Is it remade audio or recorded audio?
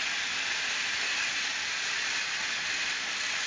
recorded